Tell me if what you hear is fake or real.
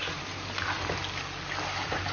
real